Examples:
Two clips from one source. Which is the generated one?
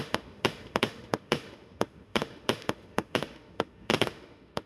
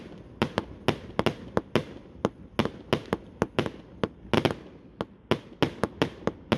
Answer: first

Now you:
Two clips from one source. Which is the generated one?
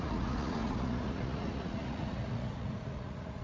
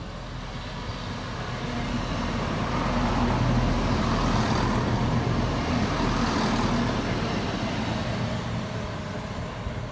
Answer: first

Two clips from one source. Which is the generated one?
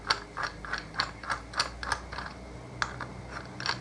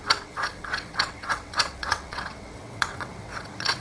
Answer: second